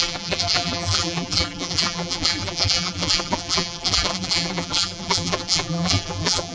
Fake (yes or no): yes